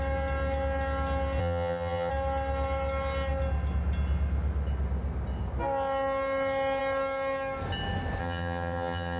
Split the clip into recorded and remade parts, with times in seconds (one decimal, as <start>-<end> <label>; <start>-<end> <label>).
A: 0.0-1.4 recorded; 1.4-2.1 remade; 2.1-8.2 recorded; 8.2-9.2 remade